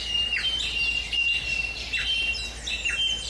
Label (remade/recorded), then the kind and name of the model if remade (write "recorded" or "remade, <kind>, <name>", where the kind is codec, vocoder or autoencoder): recorded